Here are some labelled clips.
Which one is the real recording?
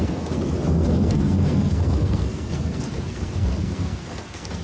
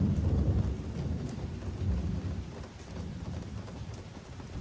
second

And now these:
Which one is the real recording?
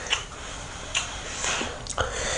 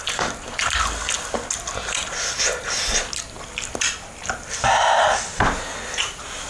second